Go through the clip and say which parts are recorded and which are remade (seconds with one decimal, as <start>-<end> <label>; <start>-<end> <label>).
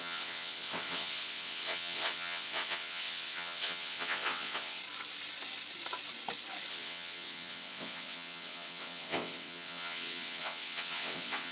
0.0-4.8 remade; 4.8-6.7 recorded; 6.7-11.5 remade